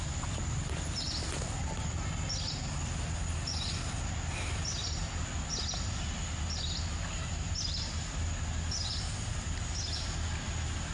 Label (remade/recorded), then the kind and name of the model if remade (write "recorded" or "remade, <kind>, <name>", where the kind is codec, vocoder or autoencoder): recorded